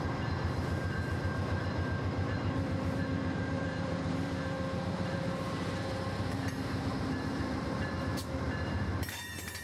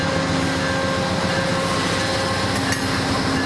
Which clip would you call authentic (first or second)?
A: second